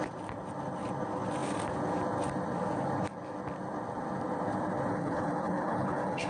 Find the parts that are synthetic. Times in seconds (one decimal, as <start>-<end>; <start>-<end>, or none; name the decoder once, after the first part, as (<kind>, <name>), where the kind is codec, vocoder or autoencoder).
4.9-6.3 (codec, HILCodec)